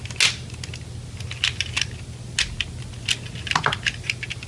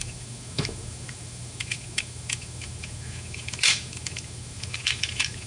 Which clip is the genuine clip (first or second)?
first